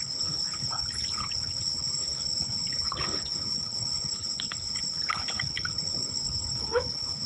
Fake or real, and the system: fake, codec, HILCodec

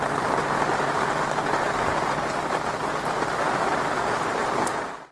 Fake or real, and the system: real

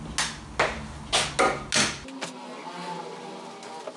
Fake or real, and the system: real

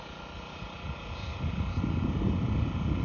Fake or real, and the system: real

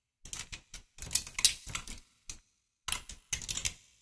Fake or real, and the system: real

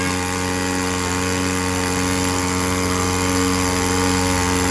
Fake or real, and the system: real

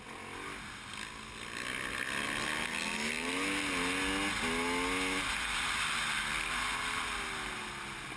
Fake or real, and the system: real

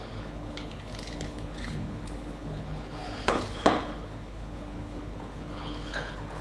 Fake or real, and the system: fake, codec, HILCodec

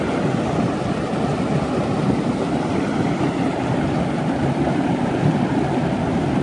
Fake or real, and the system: real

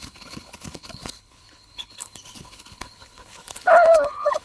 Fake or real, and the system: fake, codec, HILCodec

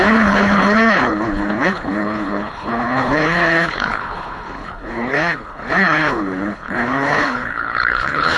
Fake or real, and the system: fake, codec, HILCodec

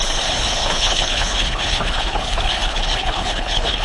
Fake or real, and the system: fake, codec, HILCodec